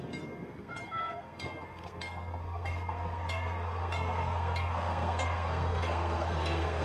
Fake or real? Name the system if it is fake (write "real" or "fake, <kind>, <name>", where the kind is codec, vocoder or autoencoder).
fake, codec, SNAC